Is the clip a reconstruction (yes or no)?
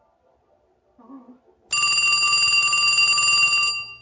no